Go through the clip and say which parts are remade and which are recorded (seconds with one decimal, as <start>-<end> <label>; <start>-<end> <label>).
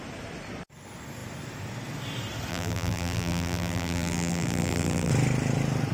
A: 0.0-2.5 recorded; 2.5-5.1 remade; 5.1-5.9 recorded